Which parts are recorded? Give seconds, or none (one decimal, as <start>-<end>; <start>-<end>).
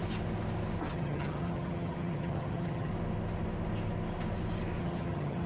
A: 0.0-0.9; 2.9-4.8